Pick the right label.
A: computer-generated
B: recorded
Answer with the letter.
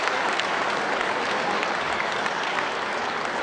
A